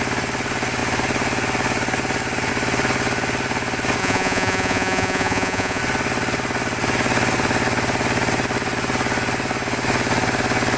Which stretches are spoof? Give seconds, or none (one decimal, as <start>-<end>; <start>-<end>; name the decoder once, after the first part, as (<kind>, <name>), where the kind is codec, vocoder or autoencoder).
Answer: 4.0-5.8 (vocoder, Vocos)